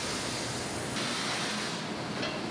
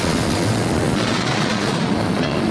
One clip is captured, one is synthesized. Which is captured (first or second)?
first